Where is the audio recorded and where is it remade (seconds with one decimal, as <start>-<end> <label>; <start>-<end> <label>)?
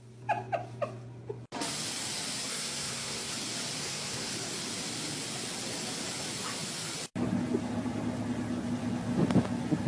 0.0-2.5 recorded; 2.5-3.3 remade; 3.3-3.8 recorded; 3.8-4.3 remade; 4.3-9.9 recorded